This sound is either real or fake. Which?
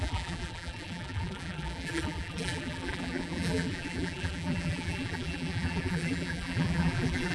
fake